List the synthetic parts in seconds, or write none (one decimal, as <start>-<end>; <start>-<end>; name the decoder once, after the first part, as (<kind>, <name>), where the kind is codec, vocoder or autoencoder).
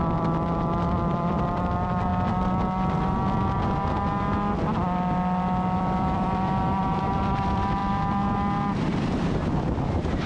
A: 0.0-2.1 (vocoder, BigVGAN v2); 5.8-7.8; 9.9-10.3